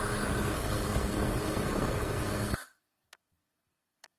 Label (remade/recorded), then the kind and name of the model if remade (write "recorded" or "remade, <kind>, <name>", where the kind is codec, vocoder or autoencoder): remade, codec, SNAC